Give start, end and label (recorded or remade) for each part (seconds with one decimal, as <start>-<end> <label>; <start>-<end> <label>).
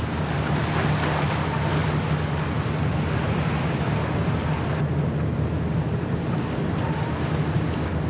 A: 0.0-8.1 recorded